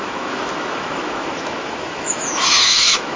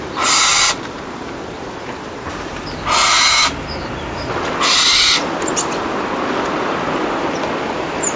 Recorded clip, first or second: second